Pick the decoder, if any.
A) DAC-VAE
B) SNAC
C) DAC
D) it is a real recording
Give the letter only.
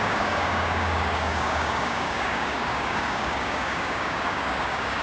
C